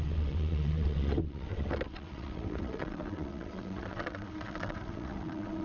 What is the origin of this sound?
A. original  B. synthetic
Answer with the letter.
B